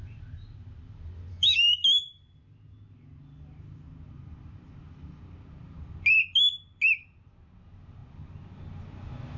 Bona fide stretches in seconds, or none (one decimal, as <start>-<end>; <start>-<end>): 0.0-1.3; 2.2-9.4

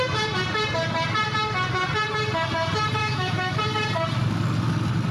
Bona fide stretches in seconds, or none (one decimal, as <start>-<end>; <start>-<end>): 0.0-3.0; 3.6-5.1

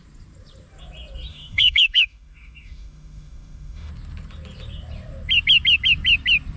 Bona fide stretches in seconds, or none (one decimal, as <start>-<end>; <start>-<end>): 0.0-1.3; 3.9-6.6